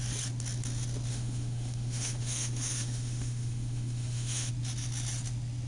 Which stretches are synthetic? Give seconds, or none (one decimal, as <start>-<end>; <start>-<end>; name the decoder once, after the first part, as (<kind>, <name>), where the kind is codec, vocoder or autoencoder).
1.1-4.5 (autoencoder, DAC-VAE)